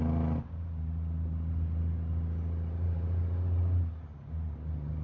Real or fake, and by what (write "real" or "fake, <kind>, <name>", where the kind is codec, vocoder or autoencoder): real